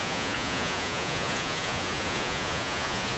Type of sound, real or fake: fake